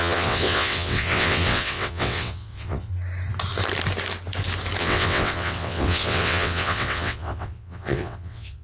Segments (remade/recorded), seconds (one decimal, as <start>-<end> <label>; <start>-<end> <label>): 0.0-2.9 remade; 2.9-4.8 recorded; 4.8-8.6 remade